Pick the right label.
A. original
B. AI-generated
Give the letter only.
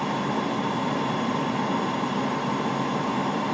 A